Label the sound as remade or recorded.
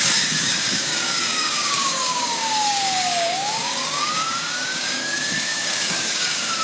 remade